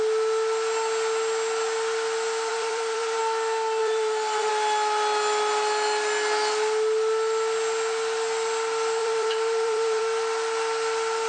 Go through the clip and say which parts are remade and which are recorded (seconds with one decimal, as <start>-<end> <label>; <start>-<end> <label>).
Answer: 0.0-2.5 recorded; 2.5-3.2 remade; 3.2-3.8 recorded; 3.8-4.5 remade; 4.5-9.0 recorded; 9.0-10.0 remade; 10.0-11.3 recorded